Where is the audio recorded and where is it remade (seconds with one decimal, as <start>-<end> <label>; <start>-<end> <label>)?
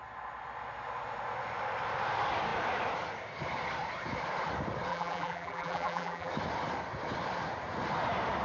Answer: 0.0-4.9 recorded; 4.9-6.3 remade; 6.3-8.4 recorded